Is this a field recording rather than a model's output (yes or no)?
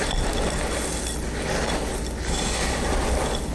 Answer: yes